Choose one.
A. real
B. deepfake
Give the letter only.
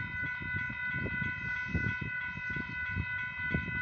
A